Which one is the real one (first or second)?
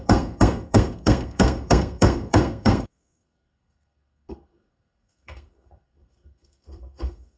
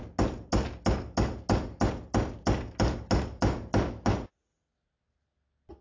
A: second